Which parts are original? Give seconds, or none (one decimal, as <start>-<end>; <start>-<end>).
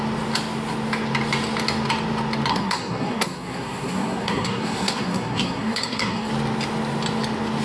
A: 0.0-2.5; 6.3-7.6